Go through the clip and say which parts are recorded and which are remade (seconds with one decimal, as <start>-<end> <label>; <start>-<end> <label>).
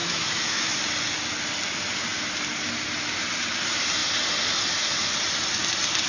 0.0-0.7 remade; 0.7-6.1 recorded